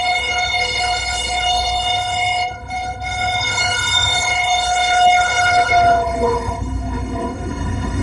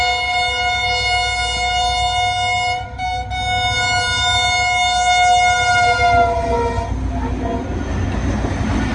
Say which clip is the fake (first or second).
first